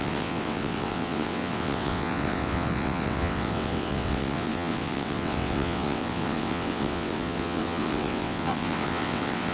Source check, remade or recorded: remade